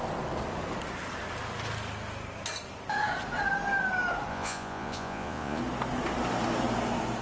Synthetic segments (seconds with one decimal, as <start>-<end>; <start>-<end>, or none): 4.3-5.6